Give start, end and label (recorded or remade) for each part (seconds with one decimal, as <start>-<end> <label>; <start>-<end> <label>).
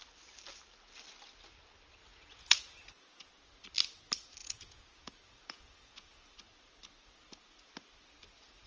0.0-2.1 recorded; 2.1-3.3 remade; 3.3-4.4 recorded; 4.4-6.3 remade; 6.3-8.7 recorded